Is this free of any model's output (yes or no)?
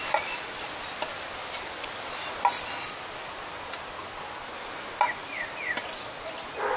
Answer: yes